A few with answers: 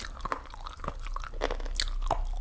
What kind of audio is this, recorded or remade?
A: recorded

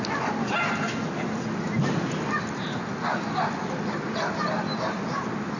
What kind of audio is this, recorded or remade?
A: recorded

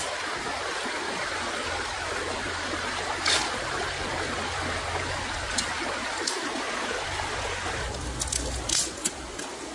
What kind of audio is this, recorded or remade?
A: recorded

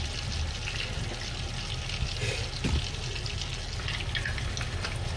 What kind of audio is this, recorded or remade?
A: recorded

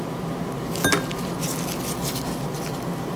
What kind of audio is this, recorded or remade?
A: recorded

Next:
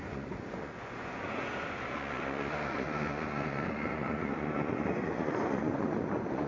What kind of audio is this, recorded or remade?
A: remade